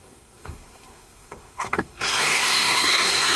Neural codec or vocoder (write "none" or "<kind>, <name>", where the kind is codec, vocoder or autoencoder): codec, SNAC